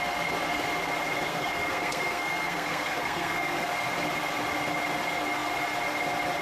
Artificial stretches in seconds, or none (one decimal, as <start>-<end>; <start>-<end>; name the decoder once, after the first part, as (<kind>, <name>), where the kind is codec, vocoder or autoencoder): 1.3-3.7 (codec, SNAC)